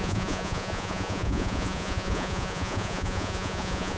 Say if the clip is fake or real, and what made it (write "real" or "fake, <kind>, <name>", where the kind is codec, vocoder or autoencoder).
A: fake, vocoder, Vocos